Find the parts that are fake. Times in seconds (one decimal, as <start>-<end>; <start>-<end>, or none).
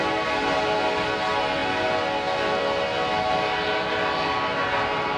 none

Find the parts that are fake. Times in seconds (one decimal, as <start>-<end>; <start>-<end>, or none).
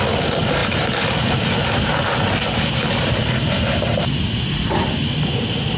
none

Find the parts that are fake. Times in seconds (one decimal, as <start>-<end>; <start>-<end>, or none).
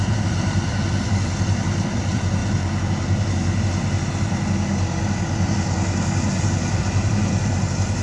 0.0-2.4; 6.8-8.0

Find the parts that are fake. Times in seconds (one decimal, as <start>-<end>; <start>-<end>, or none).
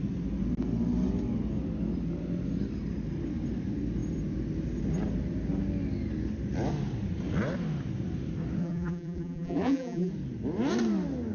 8.6-10.1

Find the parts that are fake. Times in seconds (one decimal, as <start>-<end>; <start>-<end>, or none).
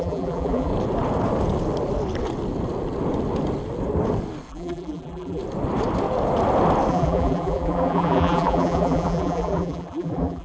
0.0-0.7; 4.5-5.4; 6.9-10.4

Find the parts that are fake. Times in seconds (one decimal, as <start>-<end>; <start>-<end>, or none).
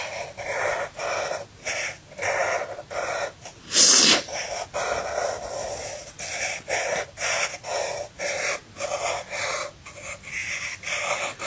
none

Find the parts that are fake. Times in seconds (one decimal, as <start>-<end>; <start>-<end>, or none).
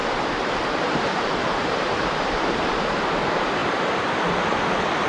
0.0-3.6